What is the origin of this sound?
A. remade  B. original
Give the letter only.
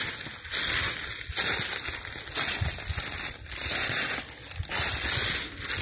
B